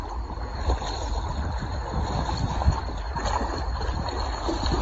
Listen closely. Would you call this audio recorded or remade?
recorded